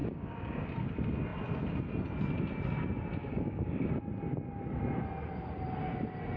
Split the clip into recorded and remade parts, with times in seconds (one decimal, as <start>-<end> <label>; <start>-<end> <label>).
0.0-0.8 remade; 0.8-3.2 recorded; 3.2-3.9 remade; 3.9-6.4 recorded